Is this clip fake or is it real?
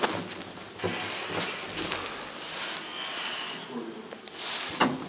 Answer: real